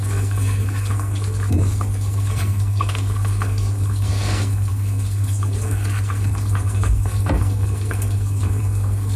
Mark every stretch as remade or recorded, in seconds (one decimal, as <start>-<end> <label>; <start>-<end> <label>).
0.0-9.2 remade